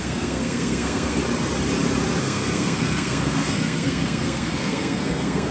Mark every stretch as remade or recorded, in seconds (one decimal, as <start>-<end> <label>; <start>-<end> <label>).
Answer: 0.0-1.2 remade; 1.2-2.2 recorded; 2.2-5.5 remade